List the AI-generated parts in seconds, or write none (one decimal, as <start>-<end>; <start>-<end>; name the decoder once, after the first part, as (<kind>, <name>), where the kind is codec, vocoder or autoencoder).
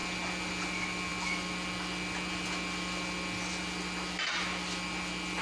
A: none